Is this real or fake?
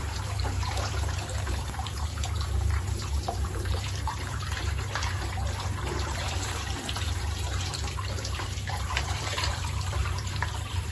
fake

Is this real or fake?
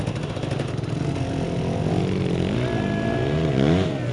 real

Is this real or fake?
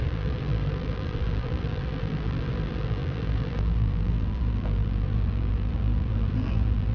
fake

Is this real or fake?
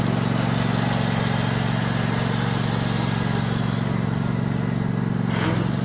real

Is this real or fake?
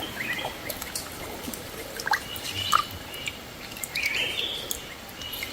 fake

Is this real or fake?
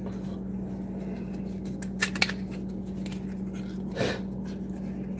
real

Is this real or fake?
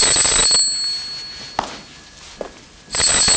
real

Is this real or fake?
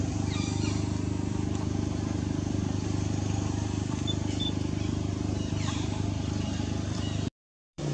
fake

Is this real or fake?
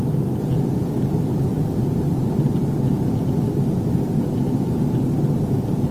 real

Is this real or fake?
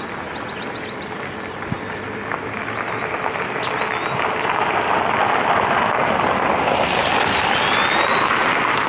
real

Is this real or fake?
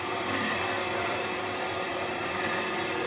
fake